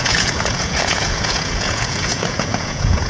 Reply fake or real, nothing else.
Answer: fake